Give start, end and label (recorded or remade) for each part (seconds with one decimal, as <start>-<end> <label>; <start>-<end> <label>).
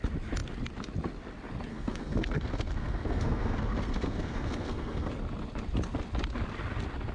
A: 0.0-1.7 recorded; 1.7-5.1 remade; 5.1-7.1 recorded